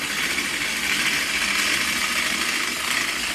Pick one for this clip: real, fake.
real